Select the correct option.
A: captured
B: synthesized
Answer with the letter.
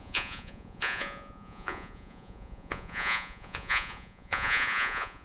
B